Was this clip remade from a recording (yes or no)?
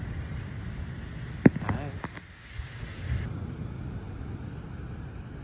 no